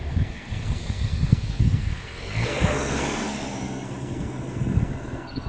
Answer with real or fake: fake